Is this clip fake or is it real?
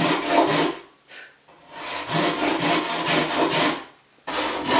real